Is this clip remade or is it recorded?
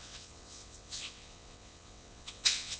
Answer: remade